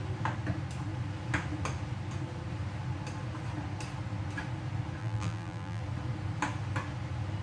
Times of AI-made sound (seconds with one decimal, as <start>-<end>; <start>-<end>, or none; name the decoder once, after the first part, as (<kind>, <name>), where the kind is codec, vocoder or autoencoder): 5.0-5.8 (vocoder, BigVGAN v2)